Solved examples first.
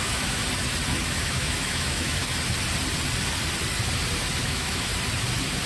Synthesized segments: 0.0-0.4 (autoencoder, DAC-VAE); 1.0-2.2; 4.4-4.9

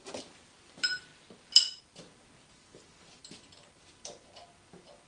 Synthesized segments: none

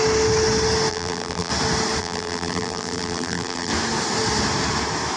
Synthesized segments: 0.9-1.5 (vocoder, BigVGAN v2); 2.0-3.7

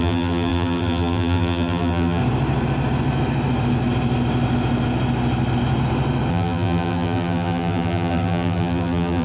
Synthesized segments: 0.0-2.2 (vocoder, BigVGAN v2); 6.3-9.2

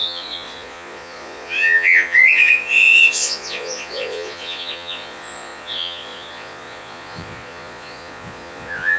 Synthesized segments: 0.0-9.0 (vocoder, Vocos)